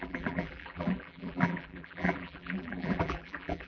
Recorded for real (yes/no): no